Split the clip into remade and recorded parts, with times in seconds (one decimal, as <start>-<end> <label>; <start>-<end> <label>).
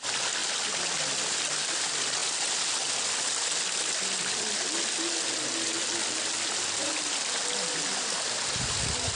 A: 0.0-9.2 recorded